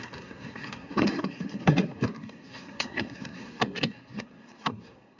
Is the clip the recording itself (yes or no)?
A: no